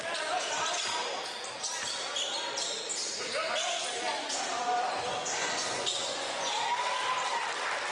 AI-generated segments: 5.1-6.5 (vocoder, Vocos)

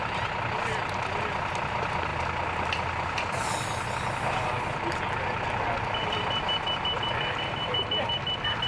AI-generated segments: none

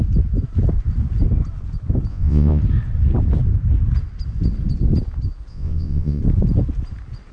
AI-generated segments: 2.1-2.6 (vocoder, Vocos); 5.5-6.2

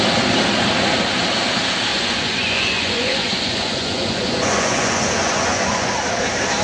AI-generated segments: 1.9-5.9 (vocoder, Vocos)

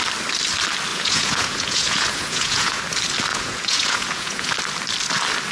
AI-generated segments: 0.9-2.8 (vocoder, Vocos); 3.3-4.5